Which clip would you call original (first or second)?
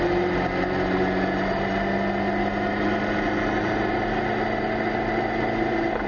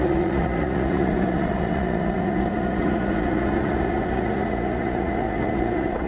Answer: first